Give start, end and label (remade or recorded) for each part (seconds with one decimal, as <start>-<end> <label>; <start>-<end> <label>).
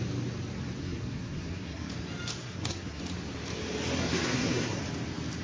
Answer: 0.0-0.8 recorded; 0.8-1.9 remade; 1.9-2.4 recorded; 2.4-3.0 remade; 3.0-4.0 recorded; 4.0-4.8 remade; 4.8-5.4 recorded